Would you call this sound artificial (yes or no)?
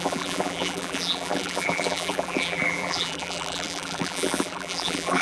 yes